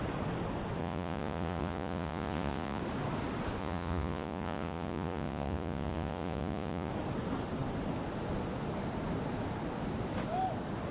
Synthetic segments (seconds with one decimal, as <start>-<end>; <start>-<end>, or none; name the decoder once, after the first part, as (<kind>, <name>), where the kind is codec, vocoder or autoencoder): 0.8-2.8 (vocoder, Vocos); 3.6-6.9